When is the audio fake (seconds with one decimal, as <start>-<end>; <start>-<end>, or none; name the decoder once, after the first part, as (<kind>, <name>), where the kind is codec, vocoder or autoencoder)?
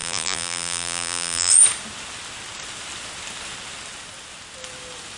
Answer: 0.0-1.5 (vocoder, BigVGAN v2)